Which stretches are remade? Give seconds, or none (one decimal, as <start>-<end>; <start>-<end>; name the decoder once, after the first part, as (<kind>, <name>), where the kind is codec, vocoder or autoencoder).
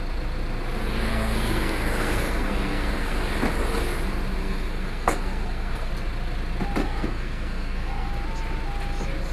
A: 1.1-3.2 (codec, SNAC); 4.4-5.9; 6.8-8.1